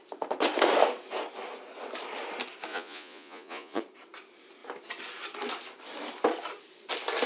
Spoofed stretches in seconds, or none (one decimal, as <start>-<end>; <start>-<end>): 2.7-3.8